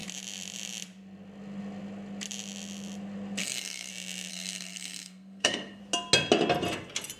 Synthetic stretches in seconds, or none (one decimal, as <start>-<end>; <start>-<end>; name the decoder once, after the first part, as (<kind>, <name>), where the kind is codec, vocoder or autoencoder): 3.4-3.9 (codec, SNAC); 4.3-5.8